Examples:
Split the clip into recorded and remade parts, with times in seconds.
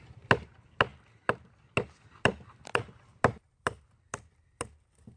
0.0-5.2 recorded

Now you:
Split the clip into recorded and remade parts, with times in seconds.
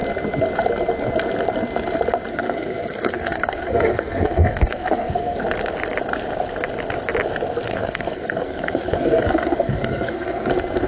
0.0-2.3 recorded; 2.3-5.4 remade; 5.4-7.7 recorded; 7.7-10.5 remade; 10.5-10.9 recorded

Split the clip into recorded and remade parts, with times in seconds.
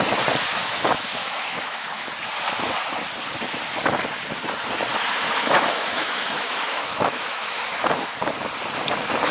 0.0-0.5 recorded; 0.5-2.1 remade; 2.1-4.9 recorded; 4.9-7.6 remade; 7.6-9.3 recorded